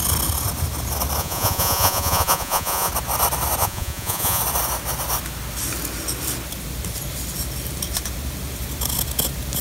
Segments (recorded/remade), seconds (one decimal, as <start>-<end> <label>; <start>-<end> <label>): 0.0-1.2 recorded; 1.2-2.9 remade; 2.9-3.6 recorded; 3.6-4.4 remade; 4.4-9.6 recorded